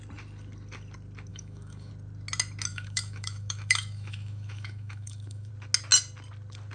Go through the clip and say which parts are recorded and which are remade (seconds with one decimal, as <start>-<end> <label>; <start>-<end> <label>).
0.0-1.3 recorded; 1.3-1.9 remade; 1.9-2.7 recorded; 2.7-5.5 remade; 5.5-6.7 recorded